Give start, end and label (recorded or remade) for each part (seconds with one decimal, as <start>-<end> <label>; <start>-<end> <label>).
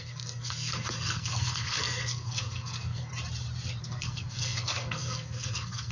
0.0-3.1 remade; 3.1-3.8 recorded; 3.8-5.9 remade